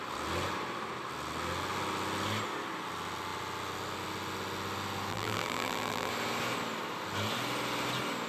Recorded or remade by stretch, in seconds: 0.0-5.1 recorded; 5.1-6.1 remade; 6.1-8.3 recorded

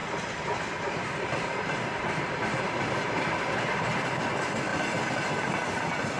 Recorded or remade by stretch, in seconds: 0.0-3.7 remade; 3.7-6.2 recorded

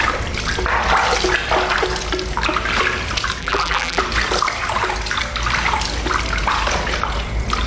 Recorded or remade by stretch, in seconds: 0.0-3.4 recorded; 3.4-4.0 remade; 4.0-7.7 recorded

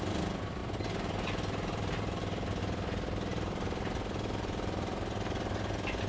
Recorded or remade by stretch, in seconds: 0.0-3.3 recorded; 3.3-3.9 remade; 3.9-6.1 recorded

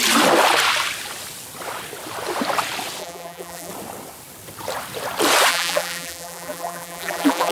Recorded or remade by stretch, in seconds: 0.0-3.0 recorded; 3.0-3.7 remade; 3.7-5.5 recorded; 5.5-7.5 remade

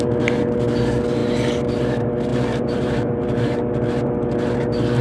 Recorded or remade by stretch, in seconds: 0.0-2.3 recorded; 2.3-3.6 remade; 3.6-5.0 recorded

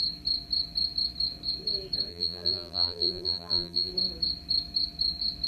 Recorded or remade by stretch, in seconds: 0.0-2.1 recorded; 2.1-3.9 remade; 3.9-5.5 recorded

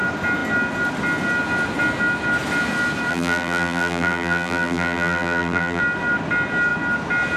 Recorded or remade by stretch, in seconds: 0.0-3.1 recorded; 3.1-5.8 remade; 5.8-7.4 recorded